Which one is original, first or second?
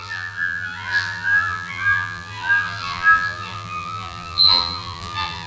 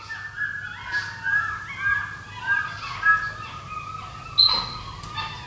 second